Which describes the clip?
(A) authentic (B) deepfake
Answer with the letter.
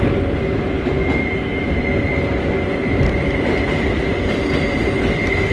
A